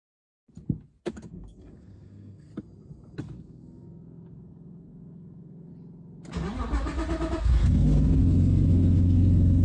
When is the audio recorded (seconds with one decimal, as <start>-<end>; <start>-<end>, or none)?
0.0-1.0; 2.5-3.2; 5.7-7.4